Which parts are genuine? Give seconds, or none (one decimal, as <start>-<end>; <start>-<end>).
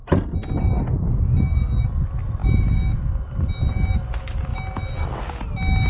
0.0-5.9